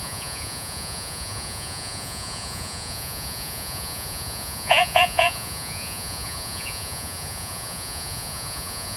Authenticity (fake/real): fake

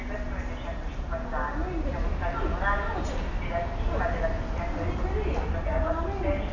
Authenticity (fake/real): real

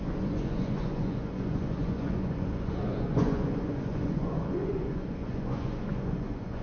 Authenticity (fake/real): fake